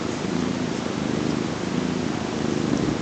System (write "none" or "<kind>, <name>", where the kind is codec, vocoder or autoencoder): none